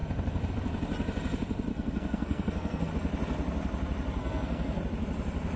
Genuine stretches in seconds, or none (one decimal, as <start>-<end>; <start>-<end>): 0.0-1.7; 2.9-4.2; 4.8-5.6